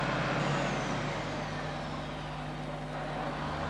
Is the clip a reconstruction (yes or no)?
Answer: no